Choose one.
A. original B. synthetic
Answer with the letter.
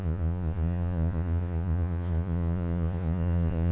B